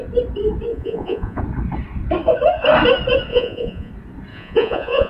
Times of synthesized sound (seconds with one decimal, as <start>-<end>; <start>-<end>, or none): 0.7-1.4; 3.3-3.9; 4.3-5.1